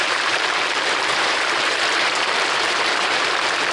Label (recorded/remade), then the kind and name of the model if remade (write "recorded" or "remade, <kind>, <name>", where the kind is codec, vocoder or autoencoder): remade, vocoder, BigVGAN v2